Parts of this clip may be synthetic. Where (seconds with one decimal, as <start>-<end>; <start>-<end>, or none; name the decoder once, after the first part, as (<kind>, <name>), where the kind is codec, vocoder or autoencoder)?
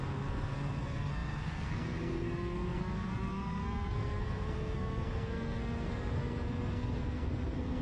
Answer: 0.0-7.8 (codec, SNAC)